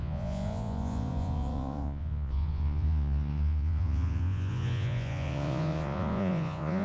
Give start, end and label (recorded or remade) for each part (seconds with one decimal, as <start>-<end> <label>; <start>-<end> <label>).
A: 0.0-6.8 remade